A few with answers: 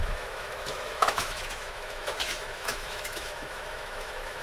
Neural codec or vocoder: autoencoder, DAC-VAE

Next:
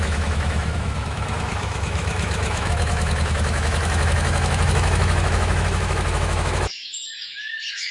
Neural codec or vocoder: autoencoder, DAC-VAE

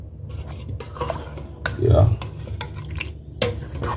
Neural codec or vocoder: none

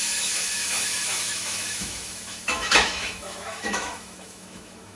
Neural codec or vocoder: autoencoder, DAC-VAE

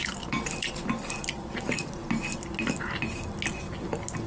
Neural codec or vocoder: none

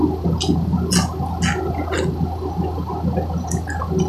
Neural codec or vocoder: none